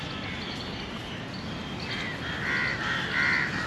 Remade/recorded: recorded